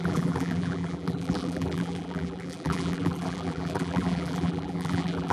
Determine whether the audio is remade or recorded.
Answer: remade